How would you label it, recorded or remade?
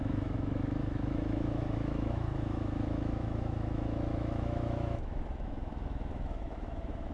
remade